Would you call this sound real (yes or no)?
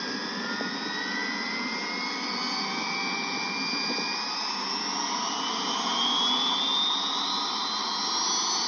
yes